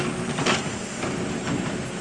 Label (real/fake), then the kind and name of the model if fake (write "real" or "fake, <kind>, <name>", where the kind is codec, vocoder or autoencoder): real